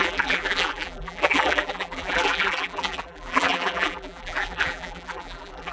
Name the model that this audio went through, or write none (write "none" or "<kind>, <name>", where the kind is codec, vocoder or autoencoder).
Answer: vocoder, BigVGAN v2